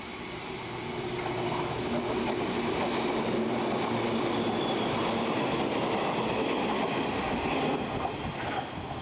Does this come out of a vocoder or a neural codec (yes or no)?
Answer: no